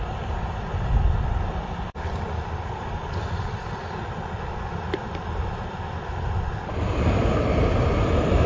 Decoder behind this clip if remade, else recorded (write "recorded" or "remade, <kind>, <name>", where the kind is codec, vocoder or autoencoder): recorded